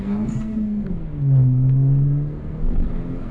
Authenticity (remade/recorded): remade